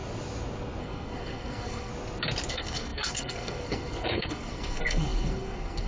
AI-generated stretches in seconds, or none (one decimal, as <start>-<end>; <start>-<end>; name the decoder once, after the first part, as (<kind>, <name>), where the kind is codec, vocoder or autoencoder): 0.8-1.9 (codec, SNAC); 2.5-5.9